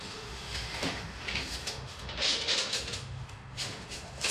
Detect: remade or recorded remade